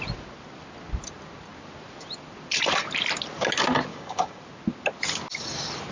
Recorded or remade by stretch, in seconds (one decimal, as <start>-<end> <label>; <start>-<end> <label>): 0.0-3.9 recorded; 3.9-4.4 remade; 4.4-5.9 recorded